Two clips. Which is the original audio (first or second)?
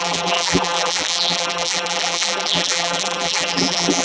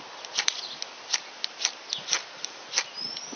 second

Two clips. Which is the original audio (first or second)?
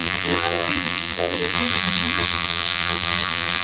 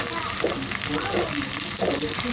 second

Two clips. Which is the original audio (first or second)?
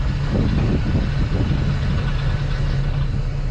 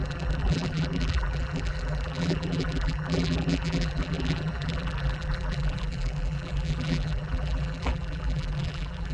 first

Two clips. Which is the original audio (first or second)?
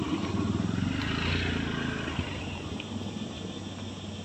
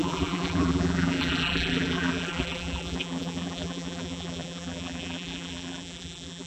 first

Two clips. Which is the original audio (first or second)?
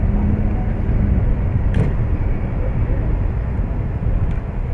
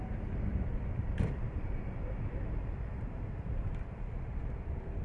first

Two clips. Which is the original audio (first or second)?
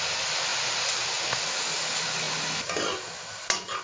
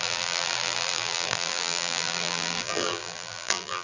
first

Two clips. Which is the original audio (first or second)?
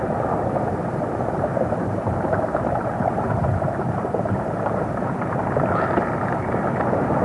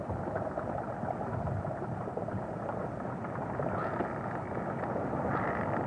second